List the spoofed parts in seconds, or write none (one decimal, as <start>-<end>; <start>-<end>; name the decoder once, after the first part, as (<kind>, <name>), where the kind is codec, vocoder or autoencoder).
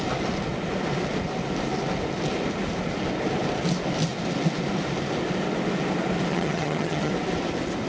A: 6.3-7.1 (vocoder, HiFi-GAN)